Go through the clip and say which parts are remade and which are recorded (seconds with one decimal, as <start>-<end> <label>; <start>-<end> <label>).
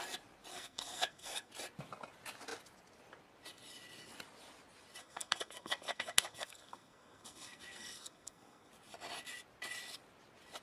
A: 0.0-0.5 recorded; 0.5-1.5 remade; 1.5-5.0 recorded; 5.0-8.7 remade; 8.7-10.6 recorded